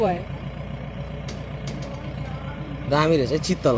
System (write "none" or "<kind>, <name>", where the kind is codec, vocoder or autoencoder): vocoder, BigVGAN v2